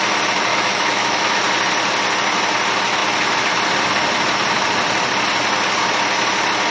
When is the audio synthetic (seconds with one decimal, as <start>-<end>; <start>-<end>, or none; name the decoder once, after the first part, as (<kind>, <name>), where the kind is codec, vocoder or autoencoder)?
0.5-1.4 (autoencoder, DAC-VAE)